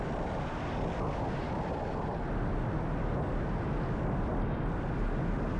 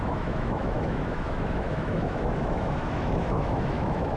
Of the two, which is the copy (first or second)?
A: second